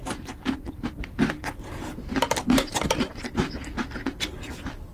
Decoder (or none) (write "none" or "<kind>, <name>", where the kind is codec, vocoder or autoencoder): vocoder, BigVGAN v2